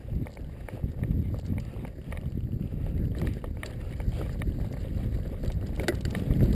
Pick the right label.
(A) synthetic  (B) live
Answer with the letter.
B